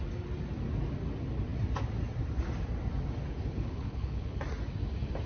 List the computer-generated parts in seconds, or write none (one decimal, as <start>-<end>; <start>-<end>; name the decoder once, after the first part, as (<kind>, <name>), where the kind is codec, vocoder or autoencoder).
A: 3.3-4.4 (codec, HILCodec)